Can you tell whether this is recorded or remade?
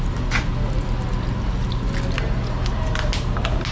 recorded